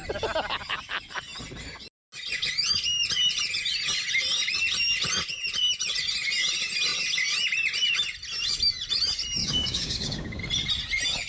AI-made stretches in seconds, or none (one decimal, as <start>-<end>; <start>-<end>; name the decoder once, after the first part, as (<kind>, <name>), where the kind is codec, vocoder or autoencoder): 9.4-10.4 (codec, DAC)